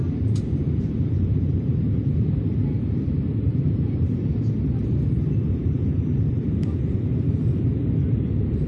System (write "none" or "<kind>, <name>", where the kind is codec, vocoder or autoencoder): vocoder, BigVGAN v2